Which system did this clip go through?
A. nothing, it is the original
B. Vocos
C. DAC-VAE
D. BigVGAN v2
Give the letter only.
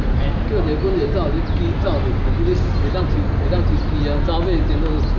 A